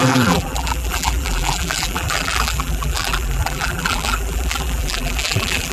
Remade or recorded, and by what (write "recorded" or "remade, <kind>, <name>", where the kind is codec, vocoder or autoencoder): remade, vocoder, BigVGAN v2